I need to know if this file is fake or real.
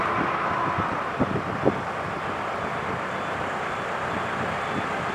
fake